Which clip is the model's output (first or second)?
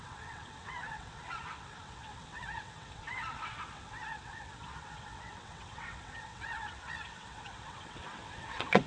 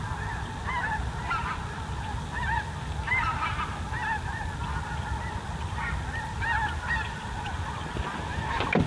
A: first